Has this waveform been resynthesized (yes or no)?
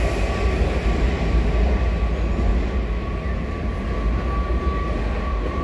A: no